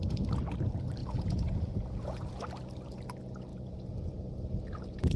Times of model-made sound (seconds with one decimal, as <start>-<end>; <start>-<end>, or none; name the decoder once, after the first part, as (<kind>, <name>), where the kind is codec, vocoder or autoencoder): 1.0-2.4 (vocoder, Vocos); 3.5-4.1